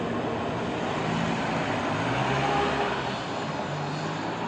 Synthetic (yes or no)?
no